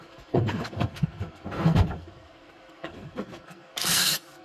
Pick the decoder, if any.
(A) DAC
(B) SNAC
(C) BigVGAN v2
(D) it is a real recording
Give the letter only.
B